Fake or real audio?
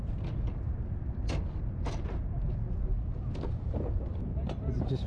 real